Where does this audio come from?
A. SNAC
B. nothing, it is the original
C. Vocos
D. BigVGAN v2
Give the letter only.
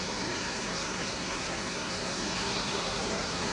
A